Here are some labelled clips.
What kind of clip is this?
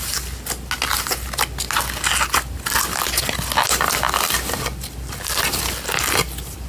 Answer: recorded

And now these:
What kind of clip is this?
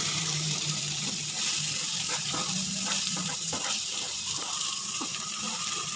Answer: remade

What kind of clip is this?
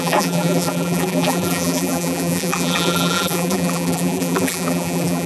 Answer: remade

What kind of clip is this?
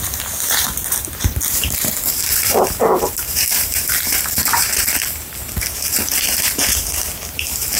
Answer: remade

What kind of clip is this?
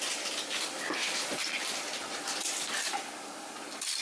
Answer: remade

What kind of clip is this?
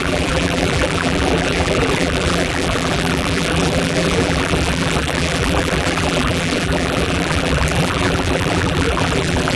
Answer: remade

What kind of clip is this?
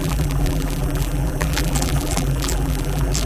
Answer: remade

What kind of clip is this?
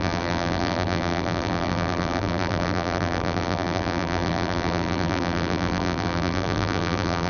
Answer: remade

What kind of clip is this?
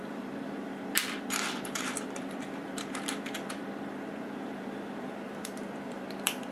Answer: remade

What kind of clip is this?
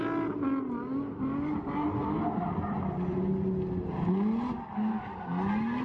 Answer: recorded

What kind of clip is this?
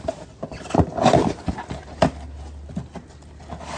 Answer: recorded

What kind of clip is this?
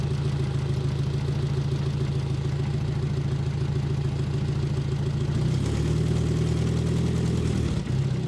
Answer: recorded